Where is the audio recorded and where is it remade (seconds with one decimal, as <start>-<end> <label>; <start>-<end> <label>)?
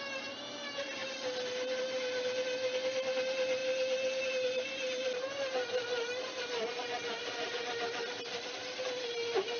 0.0-9.6 recorded